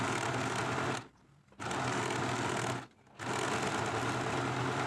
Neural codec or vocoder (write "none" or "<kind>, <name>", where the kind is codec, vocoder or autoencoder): none